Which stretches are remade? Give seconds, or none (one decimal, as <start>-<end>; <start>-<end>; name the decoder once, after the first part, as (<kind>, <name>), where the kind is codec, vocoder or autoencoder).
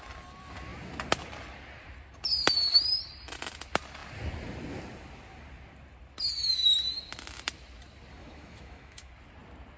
8.2-9.1 (autoencoder, DAC-VAE)